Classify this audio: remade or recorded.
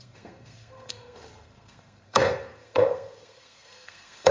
remade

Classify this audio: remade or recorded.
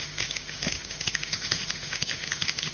remade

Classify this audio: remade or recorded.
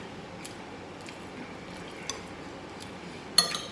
recorded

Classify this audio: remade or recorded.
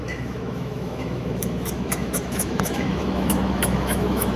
remade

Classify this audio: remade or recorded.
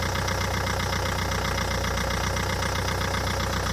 recorded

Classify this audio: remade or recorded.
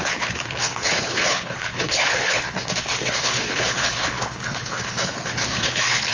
remade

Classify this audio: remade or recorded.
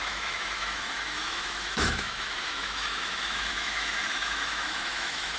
remade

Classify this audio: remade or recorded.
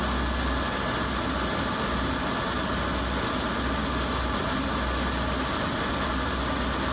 recorded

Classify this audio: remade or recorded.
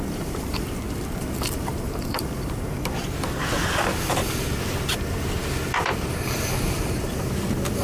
remade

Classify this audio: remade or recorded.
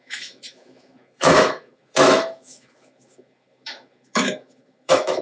remade